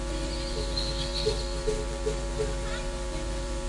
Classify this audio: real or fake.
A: fake